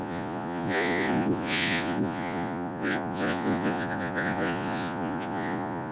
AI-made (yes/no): yes